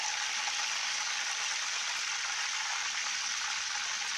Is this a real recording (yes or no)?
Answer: yes